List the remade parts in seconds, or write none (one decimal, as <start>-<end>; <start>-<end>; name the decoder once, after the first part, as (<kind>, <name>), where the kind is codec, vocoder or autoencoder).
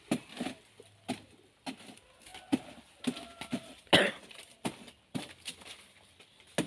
none